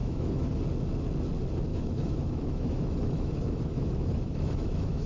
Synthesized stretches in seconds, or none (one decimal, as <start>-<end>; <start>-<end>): 0.0-0.5; 1.7-5.1